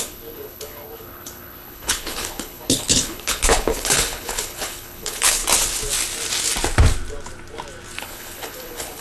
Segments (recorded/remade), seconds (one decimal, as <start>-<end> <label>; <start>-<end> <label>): 0.0-5.4 remade; 5.4-8.0 recorded; 8.0-9.0 remade